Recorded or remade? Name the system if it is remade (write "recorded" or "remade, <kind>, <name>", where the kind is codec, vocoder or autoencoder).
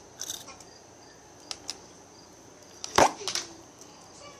recorded